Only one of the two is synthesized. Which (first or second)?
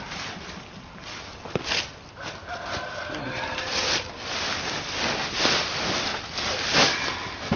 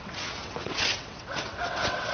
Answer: second